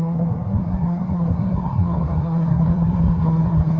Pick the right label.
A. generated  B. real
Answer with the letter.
A